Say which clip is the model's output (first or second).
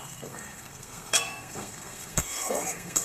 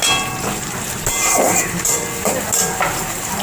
first